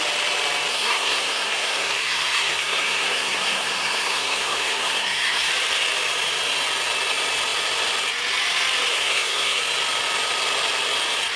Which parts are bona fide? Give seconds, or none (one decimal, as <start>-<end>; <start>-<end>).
0.0-0.7; 5.5-8.9; 9.6-11.4